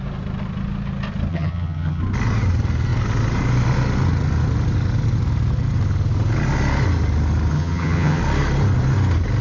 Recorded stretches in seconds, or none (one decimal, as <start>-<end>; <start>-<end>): 0.0-1.3; 2.0-7.5; 8.2-9.4